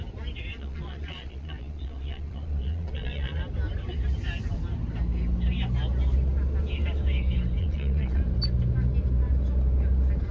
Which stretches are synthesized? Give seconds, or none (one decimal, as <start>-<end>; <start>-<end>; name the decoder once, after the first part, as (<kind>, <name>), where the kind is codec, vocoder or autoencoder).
0.5-3.4 (vocoder, Vocos); 7.6-8.2

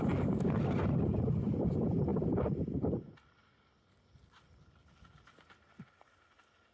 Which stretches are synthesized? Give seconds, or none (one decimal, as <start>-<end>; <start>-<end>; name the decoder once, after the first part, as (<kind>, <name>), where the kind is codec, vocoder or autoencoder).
none